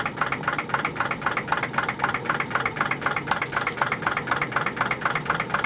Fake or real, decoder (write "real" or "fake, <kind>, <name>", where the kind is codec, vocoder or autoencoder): real